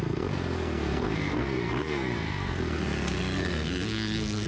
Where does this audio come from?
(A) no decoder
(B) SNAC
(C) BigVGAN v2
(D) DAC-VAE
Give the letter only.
B